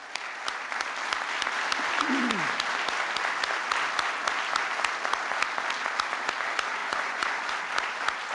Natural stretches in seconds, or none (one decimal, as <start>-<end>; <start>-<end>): 0.0-6.8; 7.5-8.3